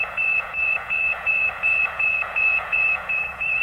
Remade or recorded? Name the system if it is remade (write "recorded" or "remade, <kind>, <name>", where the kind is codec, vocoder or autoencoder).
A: remade, vocoder, Vocos